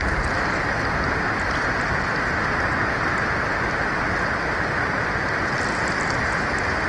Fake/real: real